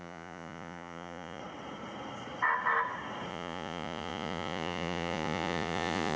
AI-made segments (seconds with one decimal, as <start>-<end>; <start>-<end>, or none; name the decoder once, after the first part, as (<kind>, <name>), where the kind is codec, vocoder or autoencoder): 0.0-1.4 (vocoder, Vocos); 3.3-6.2